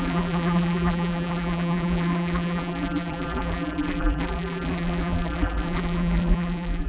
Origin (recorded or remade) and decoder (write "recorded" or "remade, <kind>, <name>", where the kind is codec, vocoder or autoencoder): remade, vocoder, BigVGAN v2